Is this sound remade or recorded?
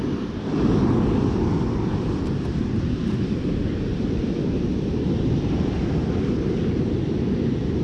recorded